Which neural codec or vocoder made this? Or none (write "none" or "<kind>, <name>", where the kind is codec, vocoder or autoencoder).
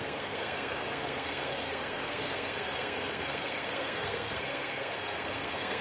codec, SNAC